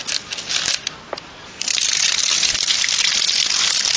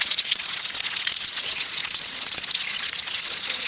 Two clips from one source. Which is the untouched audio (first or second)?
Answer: first